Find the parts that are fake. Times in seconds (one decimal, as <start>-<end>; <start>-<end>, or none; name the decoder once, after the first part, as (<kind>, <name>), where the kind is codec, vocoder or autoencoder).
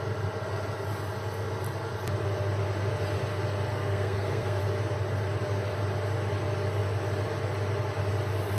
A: 3.7-4.6 (codec, SNAC)